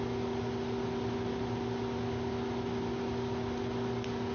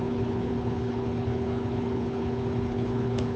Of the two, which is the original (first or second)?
first